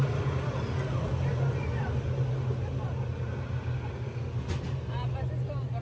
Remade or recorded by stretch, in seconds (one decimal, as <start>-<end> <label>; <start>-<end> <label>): 0.0-5.8 recorded